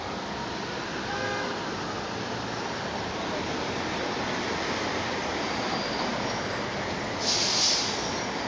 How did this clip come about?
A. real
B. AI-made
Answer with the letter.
A